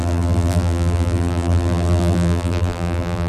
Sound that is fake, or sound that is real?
fake